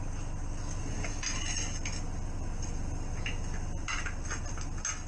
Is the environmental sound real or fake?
real